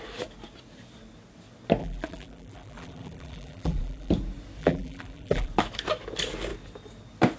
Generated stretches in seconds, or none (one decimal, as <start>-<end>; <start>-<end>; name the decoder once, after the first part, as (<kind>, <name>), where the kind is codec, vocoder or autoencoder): 1.8-4.1 (vocoder, BigVGAN v2); 4.6-5.5